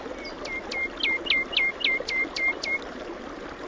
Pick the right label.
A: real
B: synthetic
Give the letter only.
A